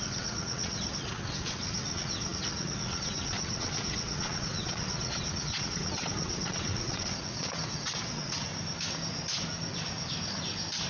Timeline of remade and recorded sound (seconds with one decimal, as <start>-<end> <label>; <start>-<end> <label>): 0.0-8.5 remade; 8.5-10.9 recorded